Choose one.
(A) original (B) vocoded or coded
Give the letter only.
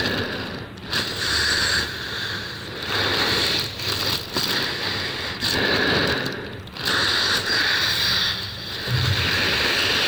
A